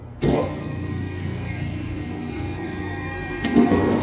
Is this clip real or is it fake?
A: fake